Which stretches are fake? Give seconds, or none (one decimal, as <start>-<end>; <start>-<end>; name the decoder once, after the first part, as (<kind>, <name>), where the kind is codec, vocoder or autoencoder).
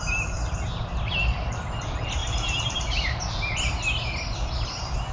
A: none